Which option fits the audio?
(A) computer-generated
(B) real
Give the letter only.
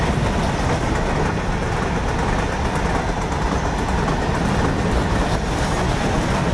B